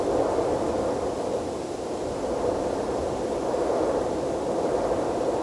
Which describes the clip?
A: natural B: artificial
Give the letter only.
A